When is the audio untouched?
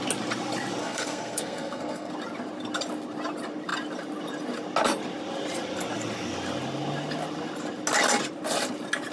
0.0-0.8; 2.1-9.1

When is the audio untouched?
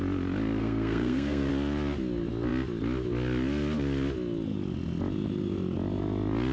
0.0-0.6; 1.5-6.5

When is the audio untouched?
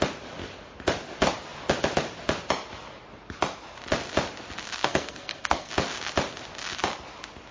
0.0-4.8; 5.7-7.5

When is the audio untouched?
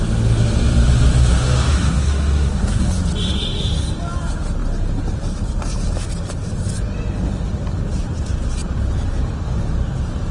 0.0-1.7; 2.9-10.3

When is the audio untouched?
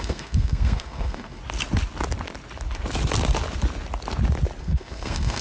1.4-4.6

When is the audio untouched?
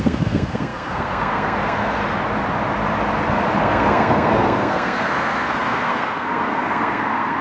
2.0-3.6